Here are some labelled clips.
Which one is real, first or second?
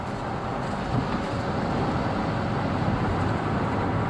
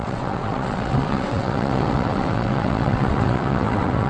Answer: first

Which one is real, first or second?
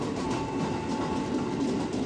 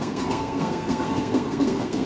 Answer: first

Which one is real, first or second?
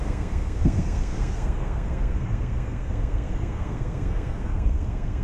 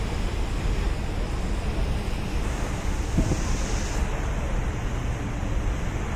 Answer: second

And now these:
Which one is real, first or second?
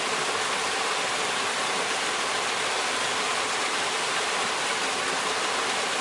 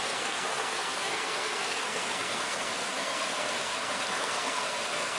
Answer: first